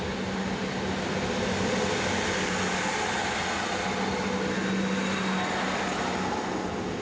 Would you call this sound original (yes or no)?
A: yes